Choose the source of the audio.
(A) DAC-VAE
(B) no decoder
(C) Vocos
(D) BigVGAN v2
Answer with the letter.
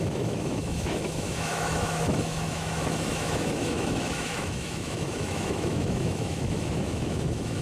A